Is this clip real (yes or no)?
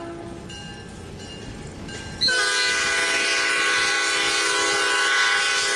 yes